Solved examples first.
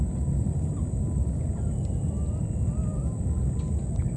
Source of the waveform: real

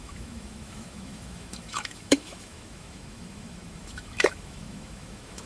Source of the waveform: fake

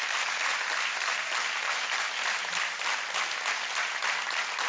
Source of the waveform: real